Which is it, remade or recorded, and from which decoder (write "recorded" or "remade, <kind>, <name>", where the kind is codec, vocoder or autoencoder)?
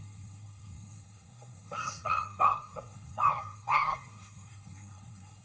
remade, codec, SNAC